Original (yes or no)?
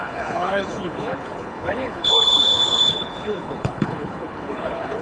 no